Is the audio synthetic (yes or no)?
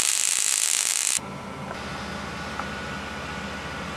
no